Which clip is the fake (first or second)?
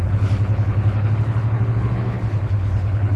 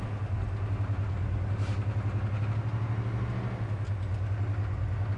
first